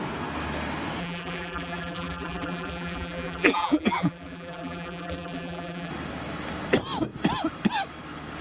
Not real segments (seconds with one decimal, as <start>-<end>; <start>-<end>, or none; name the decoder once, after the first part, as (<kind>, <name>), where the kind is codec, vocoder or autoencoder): 1.0-5.9 (vocoder, BigVGAN v2)